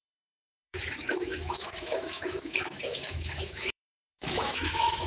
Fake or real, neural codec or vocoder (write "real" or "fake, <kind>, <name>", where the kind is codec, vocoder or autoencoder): fake, autoencoder, DAC-VAE